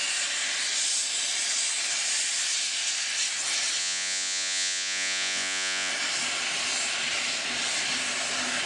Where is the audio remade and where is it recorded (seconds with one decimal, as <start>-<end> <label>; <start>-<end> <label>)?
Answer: 0.0-3.8 recorded; 3.8-5.9 remade; 5.9-8.7 recorded